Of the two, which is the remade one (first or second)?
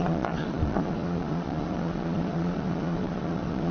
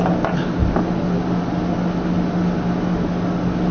first